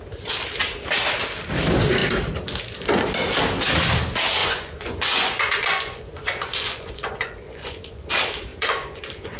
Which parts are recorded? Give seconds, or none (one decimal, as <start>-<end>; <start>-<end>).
0.0-4.4; 8.1-8.5